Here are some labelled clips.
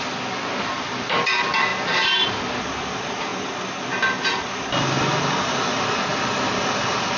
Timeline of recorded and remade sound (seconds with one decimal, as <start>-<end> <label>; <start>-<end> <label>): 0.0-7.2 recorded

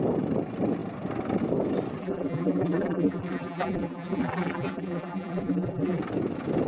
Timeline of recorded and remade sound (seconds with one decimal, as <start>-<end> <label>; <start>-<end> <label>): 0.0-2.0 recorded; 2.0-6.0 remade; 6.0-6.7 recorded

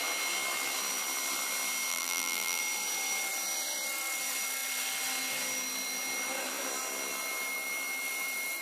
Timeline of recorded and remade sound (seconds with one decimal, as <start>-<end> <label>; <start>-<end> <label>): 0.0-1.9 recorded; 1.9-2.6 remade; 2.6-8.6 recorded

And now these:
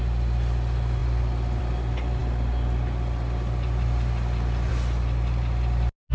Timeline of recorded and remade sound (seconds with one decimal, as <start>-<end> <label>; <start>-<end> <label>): 0.0-6.1 recorded

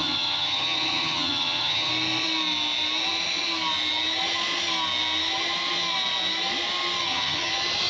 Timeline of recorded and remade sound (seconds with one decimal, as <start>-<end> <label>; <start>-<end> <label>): 0.0-1.9 remade; 1.9-7.0 recorded; 7.0-7.5 remade; 7.5-7.9 recorded